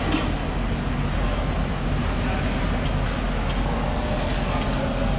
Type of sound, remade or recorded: recorded